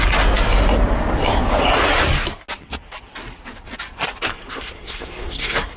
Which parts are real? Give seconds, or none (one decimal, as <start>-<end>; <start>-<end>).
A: 0.0-4.4

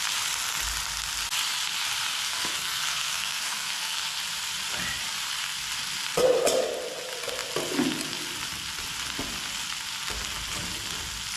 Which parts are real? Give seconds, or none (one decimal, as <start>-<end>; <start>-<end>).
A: 0.0-2.3; 4.2-11.4

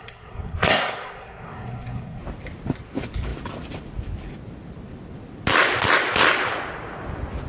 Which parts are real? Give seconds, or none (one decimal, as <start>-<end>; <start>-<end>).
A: 2.2-7.5

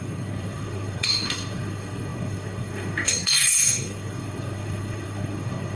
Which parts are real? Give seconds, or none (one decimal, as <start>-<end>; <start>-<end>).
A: none